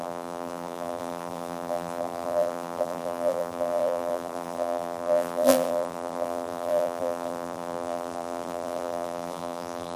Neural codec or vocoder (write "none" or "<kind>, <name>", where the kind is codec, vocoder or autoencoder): vocoder, BigVGAN v2